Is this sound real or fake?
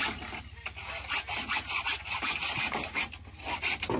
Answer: real